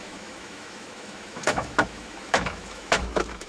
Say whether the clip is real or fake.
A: fake